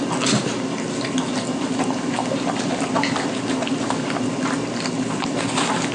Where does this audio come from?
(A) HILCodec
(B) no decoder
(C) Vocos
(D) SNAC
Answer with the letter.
B